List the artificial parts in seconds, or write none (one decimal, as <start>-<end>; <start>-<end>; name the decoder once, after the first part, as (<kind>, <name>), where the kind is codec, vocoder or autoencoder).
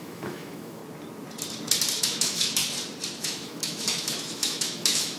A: 0.0-0.8 (autoencoder, DAC-VAE); 2.0-2.6; 3.2-5.2